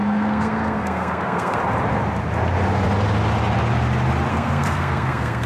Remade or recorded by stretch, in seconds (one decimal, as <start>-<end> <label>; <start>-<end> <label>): 0.0-1.6 remade; 1.6-4.3 recorded; 4.3-5.5 remade